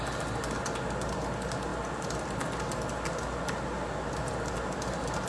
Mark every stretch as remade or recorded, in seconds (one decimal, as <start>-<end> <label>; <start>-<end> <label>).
0.0-5.3 recorded